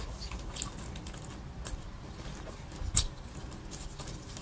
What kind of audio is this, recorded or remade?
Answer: recorded